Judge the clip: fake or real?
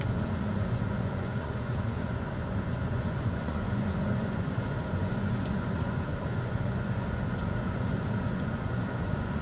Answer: fake